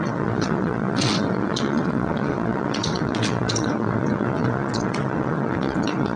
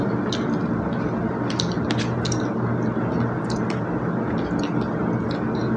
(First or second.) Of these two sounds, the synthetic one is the first